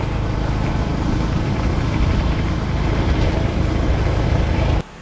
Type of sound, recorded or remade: recorded